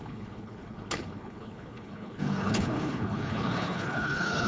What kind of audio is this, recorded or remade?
remade